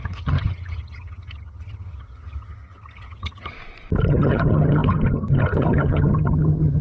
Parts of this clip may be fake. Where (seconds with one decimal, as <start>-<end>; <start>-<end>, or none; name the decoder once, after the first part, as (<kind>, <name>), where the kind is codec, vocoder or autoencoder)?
0.0-3.5 (vocoder, HiFi-GAN); 4.1-6.8